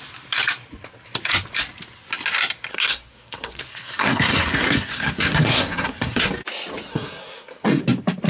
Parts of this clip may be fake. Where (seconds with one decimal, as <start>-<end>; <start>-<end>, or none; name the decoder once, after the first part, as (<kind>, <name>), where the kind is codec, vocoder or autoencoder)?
2.7-6.3 (codec, SNAC); 6.9-7.8